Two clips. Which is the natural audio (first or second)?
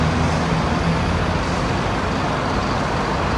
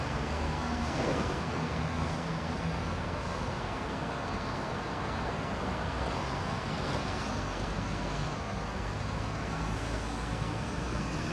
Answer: first